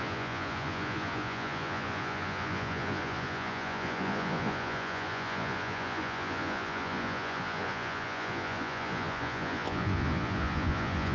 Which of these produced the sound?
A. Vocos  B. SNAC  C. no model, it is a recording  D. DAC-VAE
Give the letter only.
A